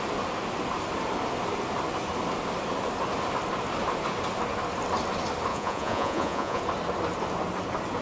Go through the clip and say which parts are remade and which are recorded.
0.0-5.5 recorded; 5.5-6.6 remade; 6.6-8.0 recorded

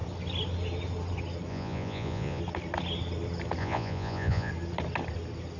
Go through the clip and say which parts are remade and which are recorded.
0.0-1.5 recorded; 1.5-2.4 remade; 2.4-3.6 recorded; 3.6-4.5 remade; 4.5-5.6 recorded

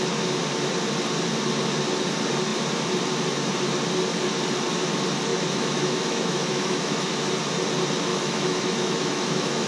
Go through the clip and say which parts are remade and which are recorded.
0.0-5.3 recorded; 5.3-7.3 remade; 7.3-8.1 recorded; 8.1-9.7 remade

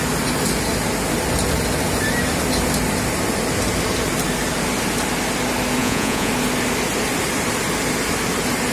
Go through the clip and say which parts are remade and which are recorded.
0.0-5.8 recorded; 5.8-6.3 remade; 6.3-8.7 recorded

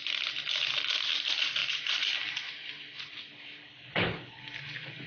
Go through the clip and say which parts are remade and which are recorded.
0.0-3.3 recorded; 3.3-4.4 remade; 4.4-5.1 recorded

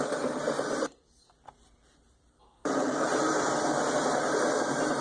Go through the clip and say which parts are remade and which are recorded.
0.0-5.0 recorded

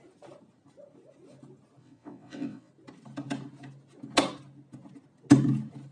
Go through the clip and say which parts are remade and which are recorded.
0.0-1.8 recorded; 1.8-2.7 remade; 2.7-5.9 recorded

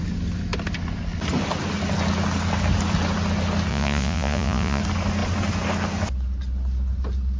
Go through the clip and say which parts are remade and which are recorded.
0.0-3.7 recorded; 3.7-4.8 remade; 4.8-7.4 recorded